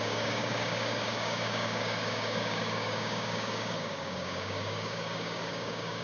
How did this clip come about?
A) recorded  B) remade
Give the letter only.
B